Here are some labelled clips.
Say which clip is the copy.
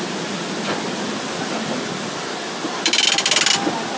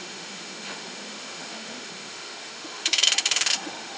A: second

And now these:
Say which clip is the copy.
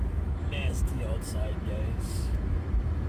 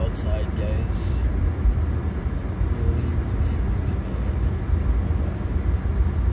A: first